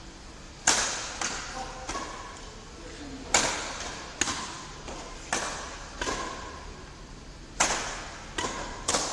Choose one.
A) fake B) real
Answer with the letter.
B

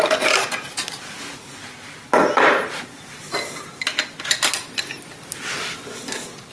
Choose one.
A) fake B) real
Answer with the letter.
B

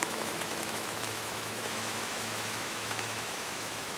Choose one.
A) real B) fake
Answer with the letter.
B